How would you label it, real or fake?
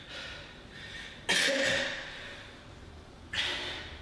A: real